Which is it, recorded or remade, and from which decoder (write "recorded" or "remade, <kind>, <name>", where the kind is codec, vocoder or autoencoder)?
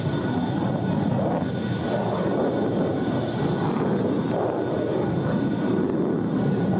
recorded